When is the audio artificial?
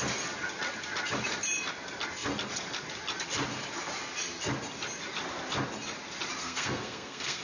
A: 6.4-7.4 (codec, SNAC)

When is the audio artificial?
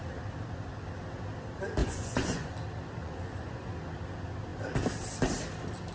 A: 1.8-2.5 (vocoder, Vocos); 3.0-3.7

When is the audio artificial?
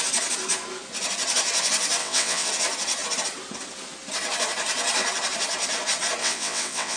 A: 2.0-2.5 (vocoder, WaveNeXt); 6.2-7.0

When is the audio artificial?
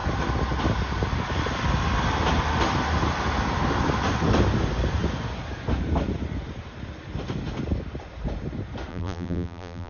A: 8.9-9.9 (vocoder, BigVGAN v2)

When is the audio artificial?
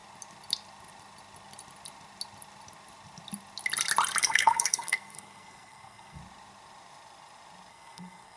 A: 4.2-6.2 (codec, SNAC); 7.7-8.4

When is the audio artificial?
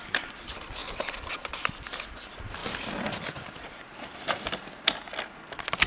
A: 2.6-3.6 (vocoder, BigVGAN v2); 4.1-4.7